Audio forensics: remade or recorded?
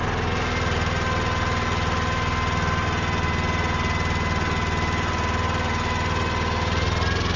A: recorded